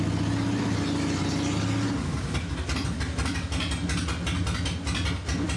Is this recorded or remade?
recorded